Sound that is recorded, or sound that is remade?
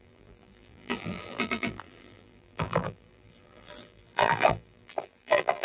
remade